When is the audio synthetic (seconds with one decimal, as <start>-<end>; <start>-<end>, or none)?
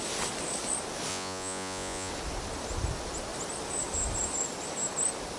1.1-2.1